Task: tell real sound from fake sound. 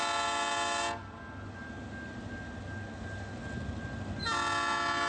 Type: real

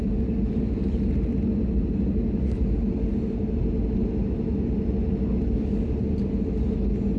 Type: real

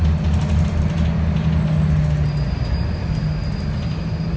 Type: real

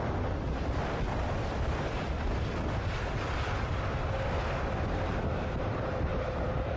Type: real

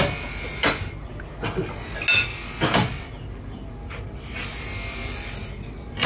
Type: real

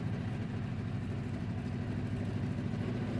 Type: real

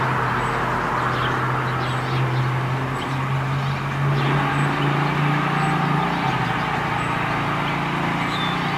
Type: real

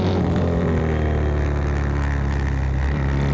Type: real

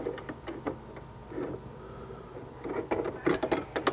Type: real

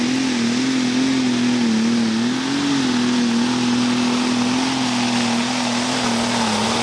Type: real